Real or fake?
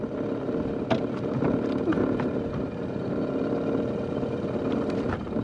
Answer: real